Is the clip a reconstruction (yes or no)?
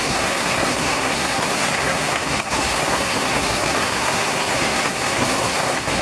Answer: yes